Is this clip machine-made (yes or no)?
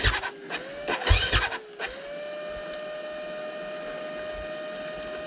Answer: no